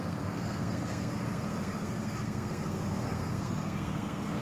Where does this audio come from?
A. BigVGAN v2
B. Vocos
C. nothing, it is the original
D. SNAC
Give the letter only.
D